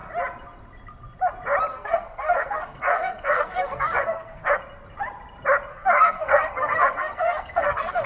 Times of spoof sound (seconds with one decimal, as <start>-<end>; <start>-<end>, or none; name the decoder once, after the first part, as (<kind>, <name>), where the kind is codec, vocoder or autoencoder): 1.7-4.6 (codec, SNAC); 5.7-8.1